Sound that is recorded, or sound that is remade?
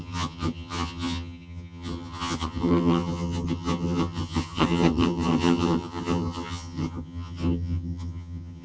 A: remade